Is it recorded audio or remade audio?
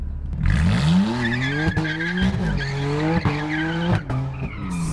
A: recorded